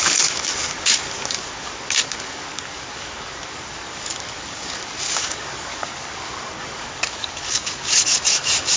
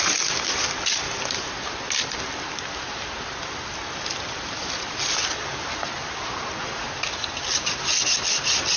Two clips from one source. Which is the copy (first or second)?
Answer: first